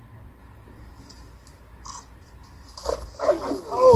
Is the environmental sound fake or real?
real